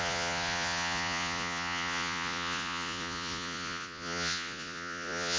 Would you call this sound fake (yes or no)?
yes